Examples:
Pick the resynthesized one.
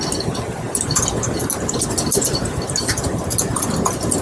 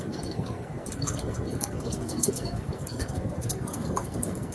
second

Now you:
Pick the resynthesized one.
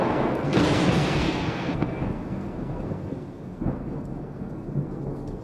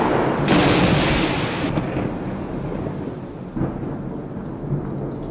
first